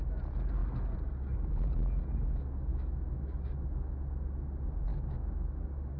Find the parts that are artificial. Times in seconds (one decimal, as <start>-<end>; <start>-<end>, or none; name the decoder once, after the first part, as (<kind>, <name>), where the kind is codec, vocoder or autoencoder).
2.7-4.0 (autoencoder, DAC-VAE); 4.9-5.6